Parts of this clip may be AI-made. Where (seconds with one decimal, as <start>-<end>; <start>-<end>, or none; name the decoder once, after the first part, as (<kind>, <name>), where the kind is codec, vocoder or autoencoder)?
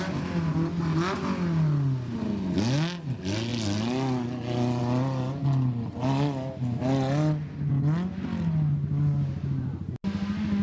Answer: none